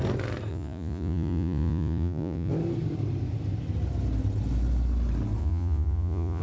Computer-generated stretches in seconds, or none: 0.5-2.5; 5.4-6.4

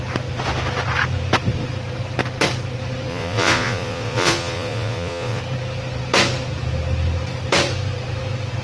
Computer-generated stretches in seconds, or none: 3.1-5.4

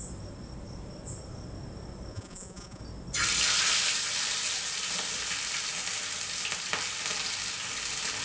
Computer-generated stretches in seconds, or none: 2.1-2.8

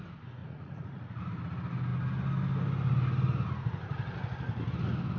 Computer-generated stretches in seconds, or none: 0.4-1.2

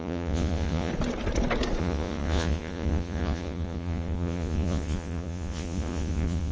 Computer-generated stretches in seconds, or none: 0.0-0.9; 1.8-6.5